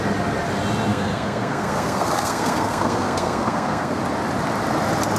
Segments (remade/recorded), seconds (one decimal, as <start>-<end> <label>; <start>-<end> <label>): 0.0-0.9 recorded; 0.9-4.0 remade; 4.0-5.2 recorded